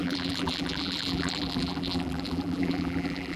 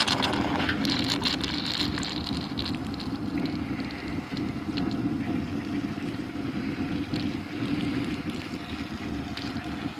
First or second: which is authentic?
second